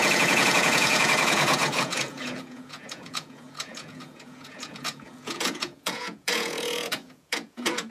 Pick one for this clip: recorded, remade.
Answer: remade